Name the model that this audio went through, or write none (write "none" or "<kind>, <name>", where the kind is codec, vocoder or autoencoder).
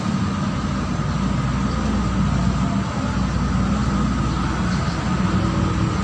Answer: none